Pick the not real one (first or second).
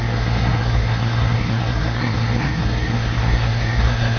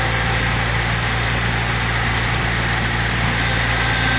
first